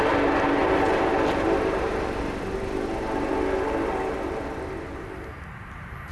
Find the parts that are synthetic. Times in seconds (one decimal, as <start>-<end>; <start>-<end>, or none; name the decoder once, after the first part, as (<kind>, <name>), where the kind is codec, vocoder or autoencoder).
none